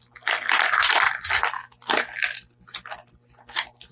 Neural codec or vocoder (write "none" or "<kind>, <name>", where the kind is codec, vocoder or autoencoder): none